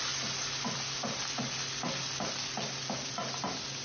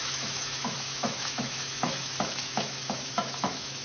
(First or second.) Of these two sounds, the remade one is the second